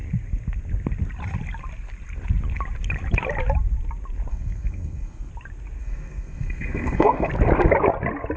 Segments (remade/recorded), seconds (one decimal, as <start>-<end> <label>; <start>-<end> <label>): 0.0-4.3 recorded; 4.3-5.3 remade; 5.3-5.8 recorded; 5.8-7.3 remade; 7.3-8.4 recorded